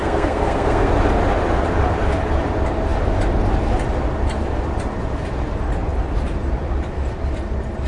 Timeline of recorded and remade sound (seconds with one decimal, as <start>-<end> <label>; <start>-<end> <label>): 0.0-0.9 remade; 0.9-7.9 recorded